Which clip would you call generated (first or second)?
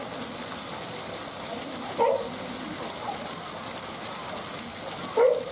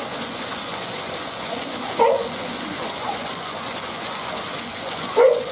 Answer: second